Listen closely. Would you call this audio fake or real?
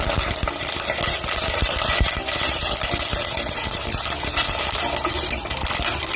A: real